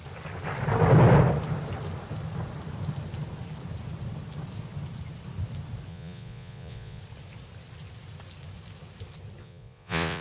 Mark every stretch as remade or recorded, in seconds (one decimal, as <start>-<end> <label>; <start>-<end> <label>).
0.0-5.9 recorded; 5.9-7.0 remade; 7.0-9.4 recorded; 9.4-10.2 remade